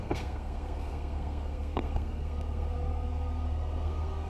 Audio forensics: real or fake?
fake